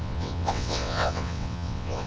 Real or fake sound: fake